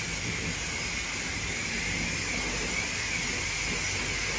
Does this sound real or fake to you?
real